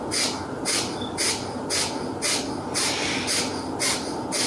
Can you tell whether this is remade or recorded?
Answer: recorded